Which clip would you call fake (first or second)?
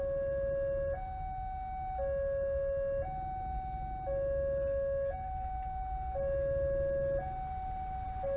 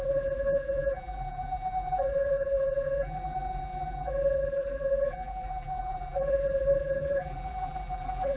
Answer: second